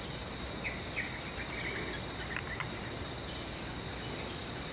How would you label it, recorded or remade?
recorded